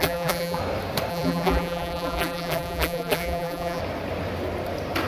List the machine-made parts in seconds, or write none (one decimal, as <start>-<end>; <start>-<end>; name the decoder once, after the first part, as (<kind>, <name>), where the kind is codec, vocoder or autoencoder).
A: 0.0-0.6 (vocoder, BigVGAN v2); 1.1-3.8